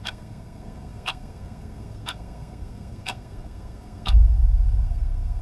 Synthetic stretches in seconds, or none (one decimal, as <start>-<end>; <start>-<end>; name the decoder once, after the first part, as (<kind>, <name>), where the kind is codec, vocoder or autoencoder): 0.0-5.4 (codec, SNAC)